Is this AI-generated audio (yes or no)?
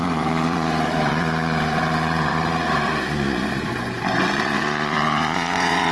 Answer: yes